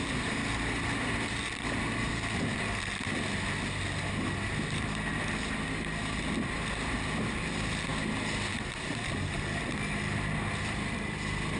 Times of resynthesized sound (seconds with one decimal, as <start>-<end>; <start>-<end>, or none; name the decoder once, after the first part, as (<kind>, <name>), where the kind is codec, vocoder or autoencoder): none

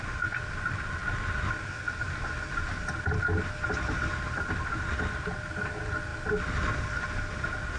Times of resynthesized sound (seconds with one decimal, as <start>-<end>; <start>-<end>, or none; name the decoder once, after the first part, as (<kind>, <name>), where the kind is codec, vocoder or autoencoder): none

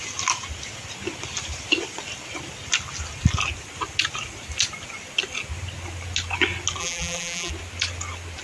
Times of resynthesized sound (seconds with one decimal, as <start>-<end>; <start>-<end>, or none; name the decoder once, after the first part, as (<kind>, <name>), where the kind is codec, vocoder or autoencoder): 6.8-7.5 (vocoder, BigVGAN v2)

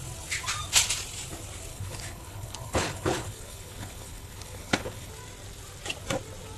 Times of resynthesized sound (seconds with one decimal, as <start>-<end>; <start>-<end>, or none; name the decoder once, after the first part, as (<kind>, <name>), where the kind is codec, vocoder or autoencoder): 1.7-5.1 (codec, HILCodec)